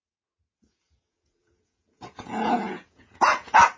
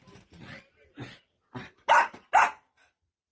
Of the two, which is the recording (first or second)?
second